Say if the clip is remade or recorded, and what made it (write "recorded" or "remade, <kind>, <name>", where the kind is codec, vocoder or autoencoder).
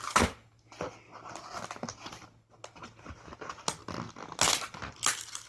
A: recorded